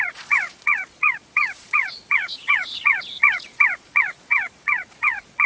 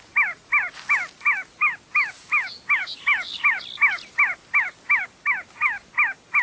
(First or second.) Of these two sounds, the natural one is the second